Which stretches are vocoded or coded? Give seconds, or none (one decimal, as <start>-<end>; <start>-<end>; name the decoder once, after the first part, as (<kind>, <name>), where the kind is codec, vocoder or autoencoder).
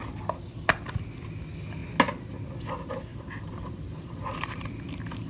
3.1-4.7 (vocoder, BigVGAN v2)